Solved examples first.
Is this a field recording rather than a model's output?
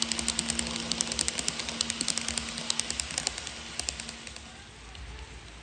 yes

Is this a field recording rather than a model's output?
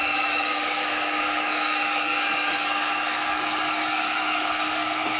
no